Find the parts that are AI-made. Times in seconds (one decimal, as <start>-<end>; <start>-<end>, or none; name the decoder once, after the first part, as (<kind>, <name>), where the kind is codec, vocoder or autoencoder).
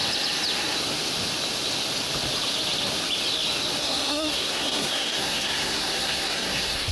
3.8-6.9 (codec, SNAC)